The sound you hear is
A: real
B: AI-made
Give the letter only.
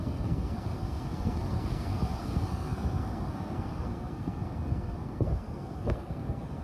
B